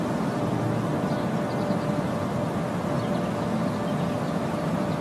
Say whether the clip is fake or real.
real